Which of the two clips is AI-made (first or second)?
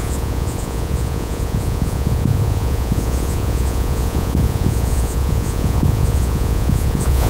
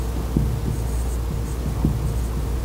first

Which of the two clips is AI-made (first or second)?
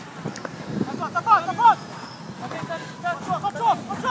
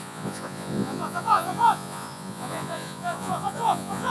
second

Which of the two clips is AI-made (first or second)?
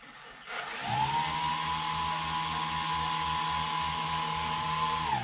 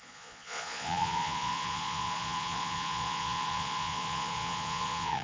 second